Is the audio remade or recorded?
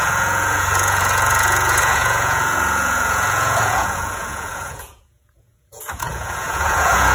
remade